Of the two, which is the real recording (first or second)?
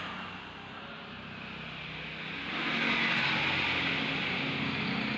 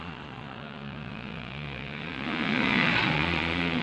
first